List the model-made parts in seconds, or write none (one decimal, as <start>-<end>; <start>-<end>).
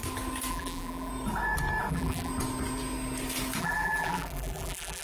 0.5-1.1; 1.9-2.3; 3.6-5.0